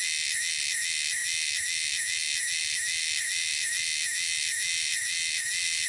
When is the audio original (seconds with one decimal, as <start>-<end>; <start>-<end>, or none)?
0.0-5.9